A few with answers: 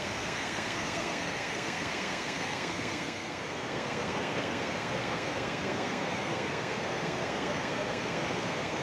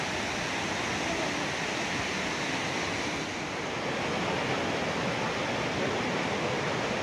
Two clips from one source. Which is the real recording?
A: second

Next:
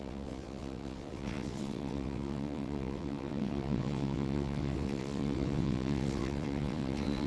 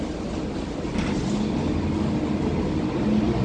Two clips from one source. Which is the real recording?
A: second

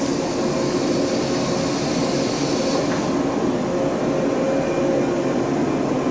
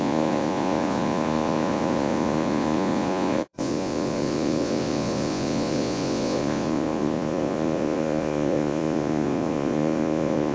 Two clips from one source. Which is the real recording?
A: first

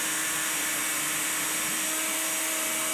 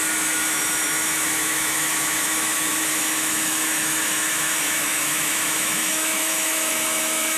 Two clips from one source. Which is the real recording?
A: first